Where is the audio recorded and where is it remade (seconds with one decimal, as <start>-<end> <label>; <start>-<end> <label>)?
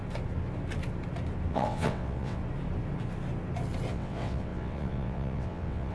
0.0-1.5 recorded; 1.5-2.4 remade; 2.4-3.9 recorded; 3.9-5.9 remade